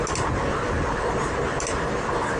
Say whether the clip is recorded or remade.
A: recorded